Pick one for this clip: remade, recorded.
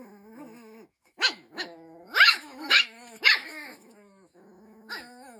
remade